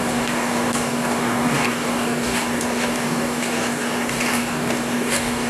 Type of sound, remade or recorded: remade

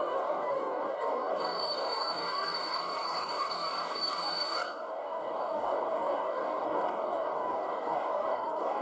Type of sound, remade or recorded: remade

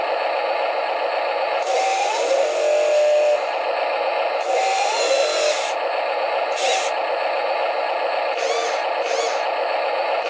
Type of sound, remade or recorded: recorded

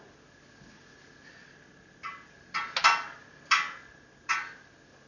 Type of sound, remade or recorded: recorded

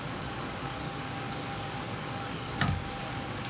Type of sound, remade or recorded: remade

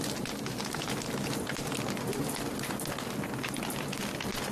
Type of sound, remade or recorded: recorded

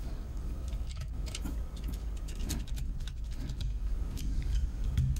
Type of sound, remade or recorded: remade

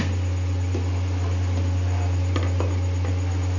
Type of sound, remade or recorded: recorded